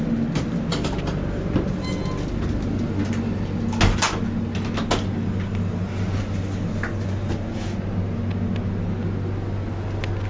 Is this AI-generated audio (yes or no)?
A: no